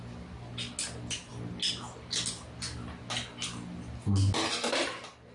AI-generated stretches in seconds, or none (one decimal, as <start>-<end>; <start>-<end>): none